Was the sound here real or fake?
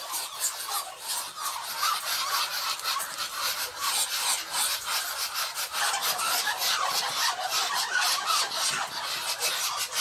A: real